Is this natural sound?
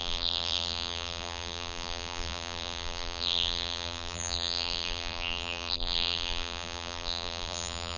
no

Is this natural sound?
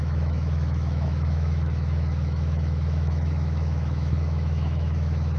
no